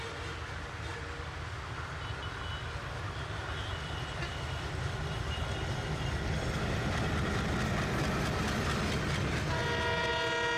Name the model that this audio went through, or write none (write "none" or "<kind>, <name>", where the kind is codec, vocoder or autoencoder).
none